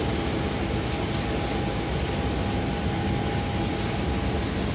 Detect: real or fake real